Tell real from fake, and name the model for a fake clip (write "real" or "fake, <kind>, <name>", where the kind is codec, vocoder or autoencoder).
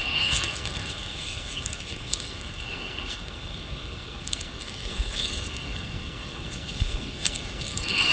fake, codec, SNAC